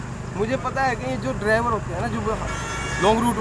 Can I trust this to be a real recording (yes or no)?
yes